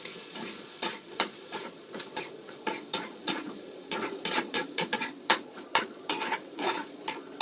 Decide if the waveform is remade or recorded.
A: remade